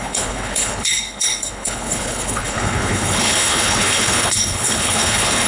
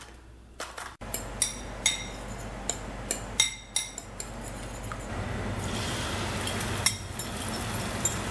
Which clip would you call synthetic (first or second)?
first